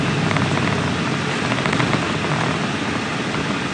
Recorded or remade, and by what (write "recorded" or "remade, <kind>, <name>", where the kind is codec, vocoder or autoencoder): recorded